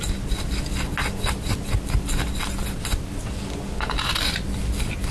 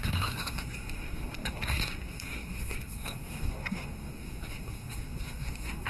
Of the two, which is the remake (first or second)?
second